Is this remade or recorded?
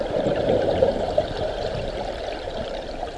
remade